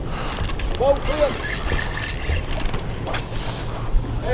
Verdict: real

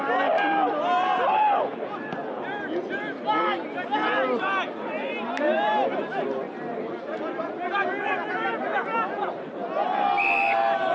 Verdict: real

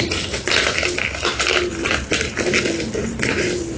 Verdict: real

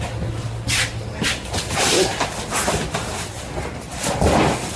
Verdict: real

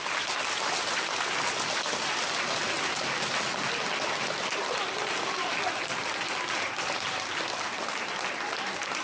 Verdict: real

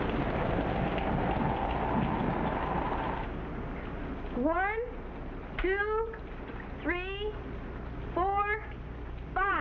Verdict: real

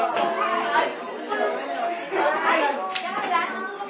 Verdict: real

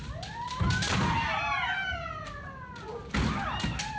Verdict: real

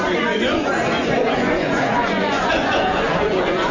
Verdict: fake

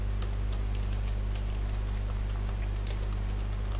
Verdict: real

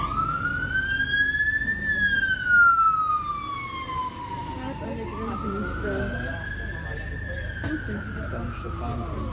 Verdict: real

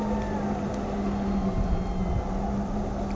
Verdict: real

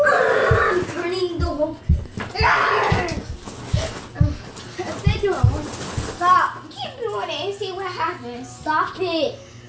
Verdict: real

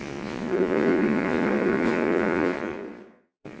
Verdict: fake